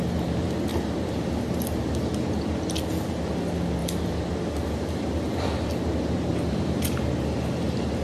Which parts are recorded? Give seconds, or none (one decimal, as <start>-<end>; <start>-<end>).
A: 0.0-6.3; 6.8-8.0